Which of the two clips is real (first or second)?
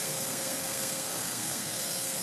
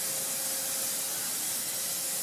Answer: second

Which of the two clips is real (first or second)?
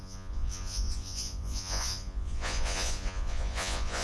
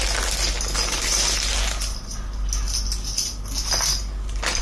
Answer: second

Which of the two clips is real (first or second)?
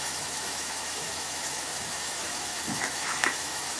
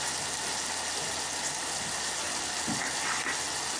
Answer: second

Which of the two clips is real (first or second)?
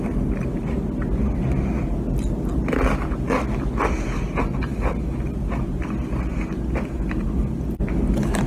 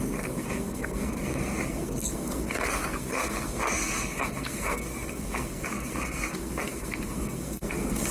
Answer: first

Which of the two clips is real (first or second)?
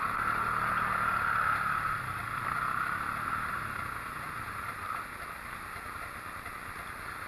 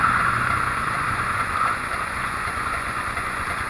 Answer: first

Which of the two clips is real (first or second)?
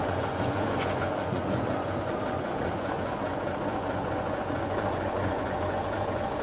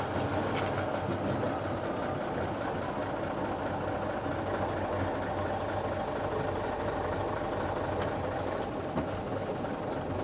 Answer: second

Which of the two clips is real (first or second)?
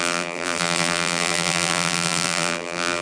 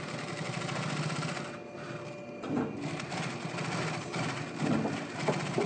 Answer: second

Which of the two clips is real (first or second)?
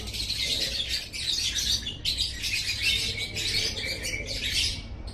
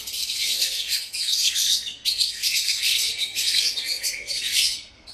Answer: first